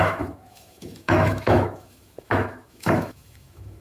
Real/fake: fake